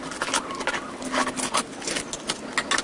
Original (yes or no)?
yes